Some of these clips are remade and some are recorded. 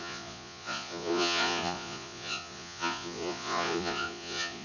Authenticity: remade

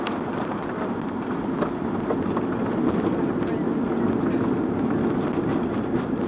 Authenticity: recorded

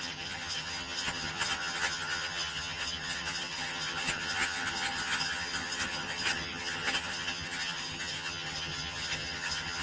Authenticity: remade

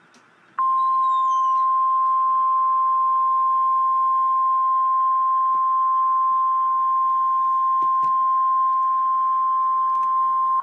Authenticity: recorded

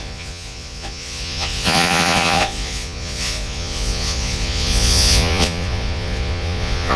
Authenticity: remade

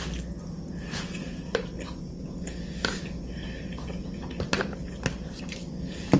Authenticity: recorded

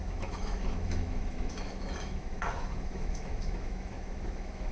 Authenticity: remade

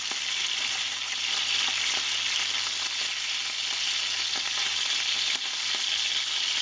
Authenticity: recorded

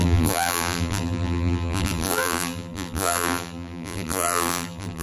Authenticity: remade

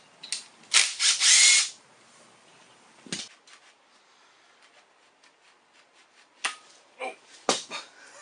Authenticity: recorded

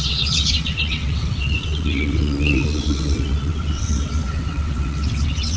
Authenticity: remade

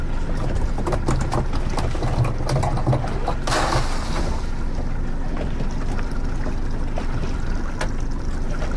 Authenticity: recorded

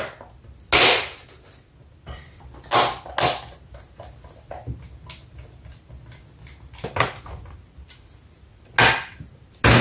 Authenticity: recorded